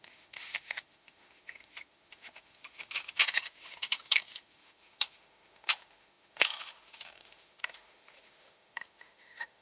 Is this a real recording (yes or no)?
no